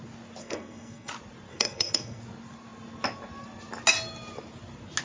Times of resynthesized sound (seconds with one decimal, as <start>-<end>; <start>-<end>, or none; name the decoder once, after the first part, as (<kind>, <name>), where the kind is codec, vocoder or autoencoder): 0.4-1.1 (codec, SNAC); 1.5-2.2